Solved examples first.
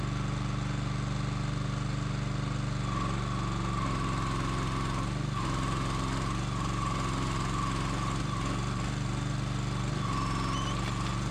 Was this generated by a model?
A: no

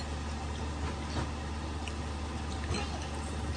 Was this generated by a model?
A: no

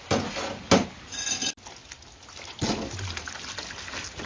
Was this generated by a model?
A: no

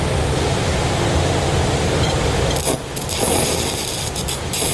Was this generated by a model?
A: no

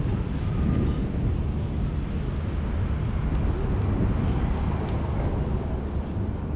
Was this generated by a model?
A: no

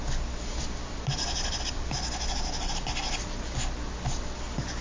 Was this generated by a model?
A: no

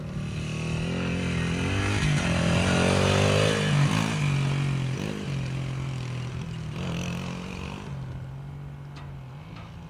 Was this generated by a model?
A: no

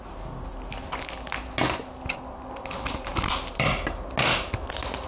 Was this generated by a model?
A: no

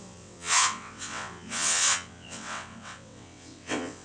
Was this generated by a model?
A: yes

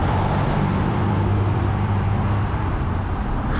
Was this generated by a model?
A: yes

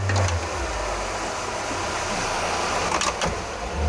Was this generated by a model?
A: no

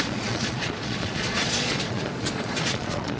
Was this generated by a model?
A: yes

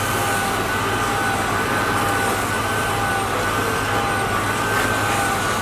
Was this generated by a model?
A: no